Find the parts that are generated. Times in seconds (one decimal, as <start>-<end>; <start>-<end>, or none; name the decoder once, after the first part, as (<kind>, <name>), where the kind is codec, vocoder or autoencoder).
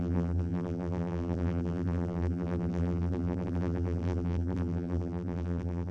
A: 0.0-5.9 (vocoder, BigVGAN v2)